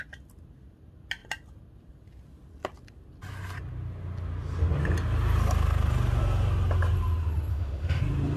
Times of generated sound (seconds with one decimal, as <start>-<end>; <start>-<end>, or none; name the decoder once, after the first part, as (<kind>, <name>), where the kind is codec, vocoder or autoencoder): 7.5-8.0 (autoencoder, DAC-VAE)

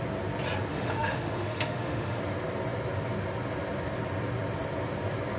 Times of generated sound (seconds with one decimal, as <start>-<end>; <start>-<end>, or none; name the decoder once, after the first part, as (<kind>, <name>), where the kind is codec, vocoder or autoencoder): 0.7-2.2 (autoencoder, DAC-VAE)